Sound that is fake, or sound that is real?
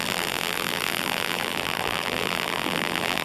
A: fake